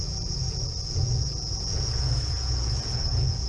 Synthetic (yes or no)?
yes